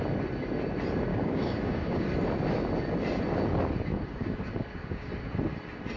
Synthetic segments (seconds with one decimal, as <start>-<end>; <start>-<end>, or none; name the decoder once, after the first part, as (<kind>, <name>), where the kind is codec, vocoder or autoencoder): 1.1-2.1 (codec, DAC); 3.9-5.1